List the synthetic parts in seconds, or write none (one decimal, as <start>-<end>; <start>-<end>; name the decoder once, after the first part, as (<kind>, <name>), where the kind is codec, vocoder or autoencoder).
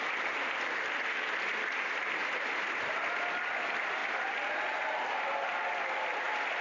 0.0-2.2 (vocoder, BigVGAN v2); 2.9-6.6